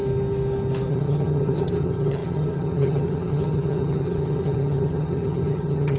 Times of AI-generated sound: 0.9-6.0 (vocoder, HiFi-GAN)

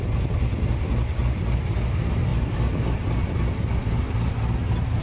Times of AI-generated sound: none

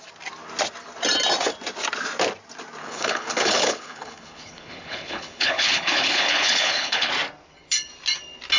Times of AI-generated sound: 2.8-7.1 (codec, HILCodec)

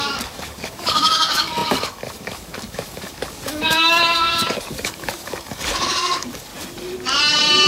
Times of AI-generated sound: 0.0-6.5 (codec, DAC)

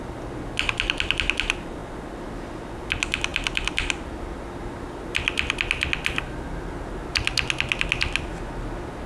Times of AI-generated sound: none

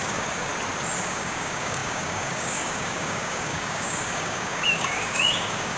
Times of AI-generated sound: 0.0-0.5 (codec, DAC); 1.1-5.8